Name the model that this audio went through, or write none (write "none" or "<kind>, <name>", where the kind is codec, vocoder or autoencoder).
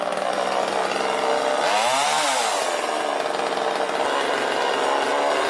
none